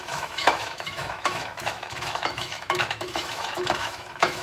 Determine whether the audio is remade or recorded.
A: remade